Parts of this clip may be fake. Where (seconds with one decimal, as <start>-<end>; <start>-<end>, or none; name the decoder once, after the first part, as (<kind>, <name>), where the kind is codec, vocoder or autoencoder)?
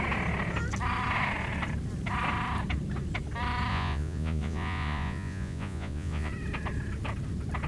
3.7-6.3 (vocoder, Vocos)